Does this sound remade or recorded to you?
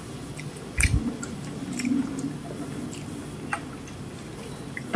recorded